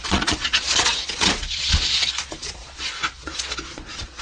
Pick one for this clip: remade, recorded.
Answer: remade